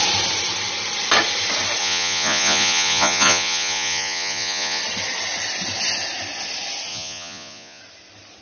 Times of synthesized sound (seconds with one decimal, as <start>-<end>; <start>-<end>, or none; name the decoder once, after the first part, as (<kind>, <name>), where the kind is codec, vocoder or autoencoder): 1.8-4.8 (vocoder, Vocos); 6.9-7.8